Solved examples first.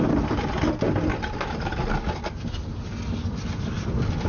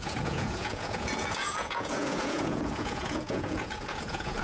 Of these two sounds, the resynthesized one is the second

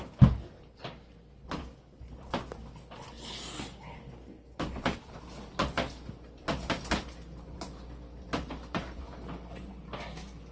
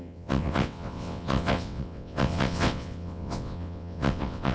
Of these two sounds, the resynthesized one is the second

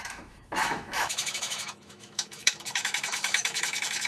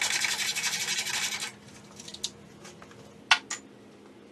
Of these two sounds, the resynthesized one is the first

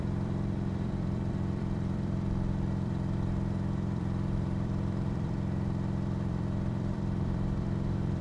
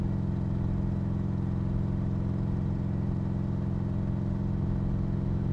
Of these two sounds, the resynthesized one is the first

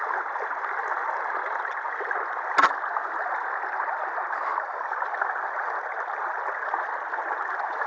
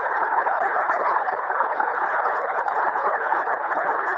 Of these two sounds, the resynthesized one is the second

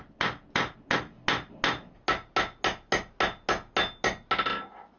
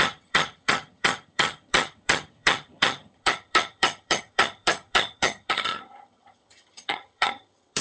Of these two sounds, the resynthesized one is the second